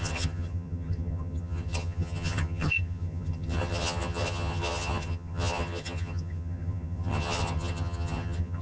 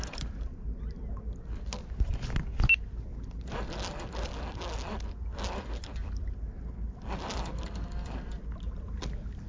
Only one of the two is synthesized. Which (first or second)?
first